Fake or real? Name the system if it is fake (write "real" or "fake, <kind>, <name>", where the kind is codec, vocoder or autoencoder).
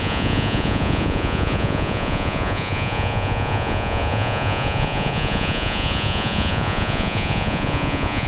fake, vocoder, Vocos